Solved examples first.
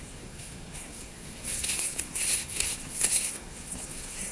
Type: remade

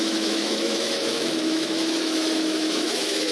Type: remade